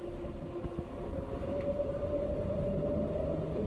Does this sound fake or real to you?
real